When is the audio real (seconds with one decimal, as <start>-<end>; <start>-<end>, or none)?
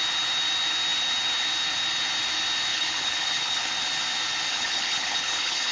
0.0-2.7; 3.7-4.5